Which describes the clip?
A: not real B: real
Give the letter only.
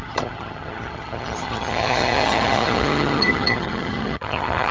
A